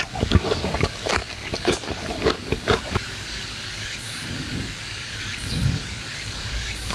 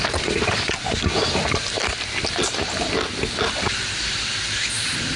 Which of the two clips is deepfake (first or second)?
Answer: first